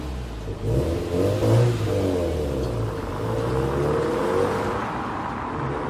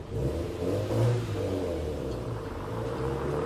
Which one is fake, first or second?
second